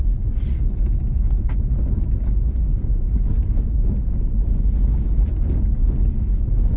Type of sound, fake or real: real